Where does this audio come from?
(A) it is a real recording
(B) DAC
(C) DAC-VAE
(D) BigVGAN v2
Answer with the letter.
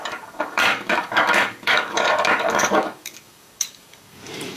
B